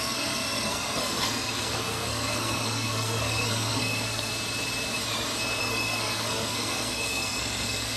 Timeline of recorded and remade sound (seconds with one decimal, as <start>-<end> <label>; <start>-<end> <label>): 0.0-4.3 remade; 4.3-5.6 recorded; 5.6-8.0 remade